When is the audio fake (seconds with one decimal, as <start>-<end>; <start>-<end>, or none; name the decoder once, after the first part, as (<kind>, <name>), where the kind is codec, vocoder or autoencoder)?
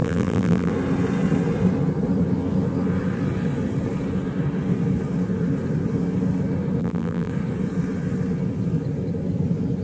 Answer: 0.0-0.7 (vocoder, BigVGAN v2); 6.8-7.3